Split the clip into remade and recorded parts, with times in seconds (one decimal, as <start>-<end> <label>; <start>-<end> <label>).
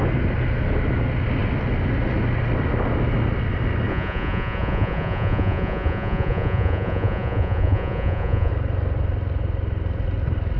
0.0-3.9 recorded; 3.9-8.5 remade; 8.5-10.6 recorded